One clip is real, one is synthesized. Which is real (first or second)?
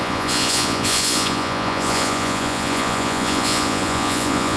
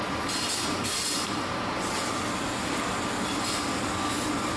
second